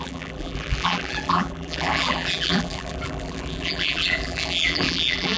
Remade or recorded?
remade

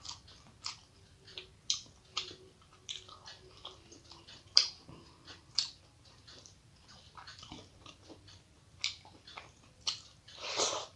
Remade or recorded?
remade